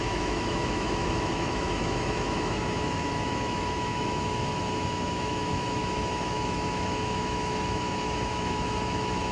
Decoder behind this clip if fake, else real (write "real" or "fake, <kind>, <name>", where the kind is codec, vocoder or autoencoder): fake, autoencoder, DAC-VAE